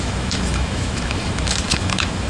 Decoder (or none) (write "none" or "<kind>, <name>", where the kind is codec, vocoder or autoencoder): autoencoder, DAC-VAE